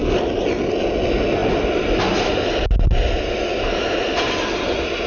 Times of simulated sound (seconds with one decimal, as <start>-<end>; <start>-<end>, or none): none